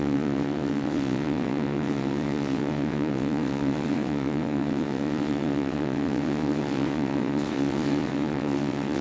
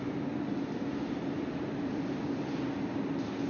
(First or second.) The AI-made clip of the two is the first